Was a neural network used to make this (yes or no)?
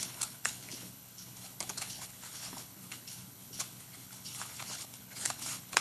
yes